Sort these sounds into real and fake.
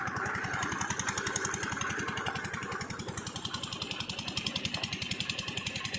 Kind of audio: real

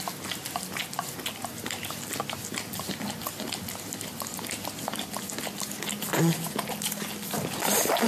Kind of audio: real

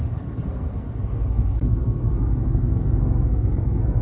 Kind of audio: fake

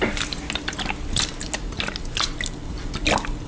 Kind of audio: real